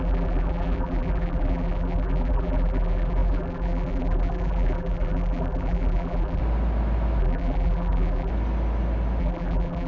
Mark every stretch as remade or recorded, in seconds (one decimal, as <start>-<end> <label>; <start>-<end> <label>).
0.0-6.4 remade; 6.4-7.2 recorded; 7.2-8.3 remade; 8.3-9.2 recorded; 9.2-9.9 remade